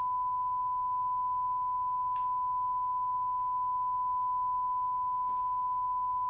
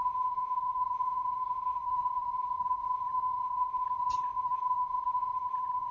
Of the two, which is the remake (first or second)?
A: second